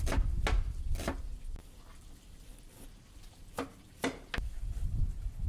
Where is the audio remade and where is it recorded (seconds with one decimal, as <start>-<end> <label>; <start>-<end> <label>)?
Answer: 0.0-5.5 recorded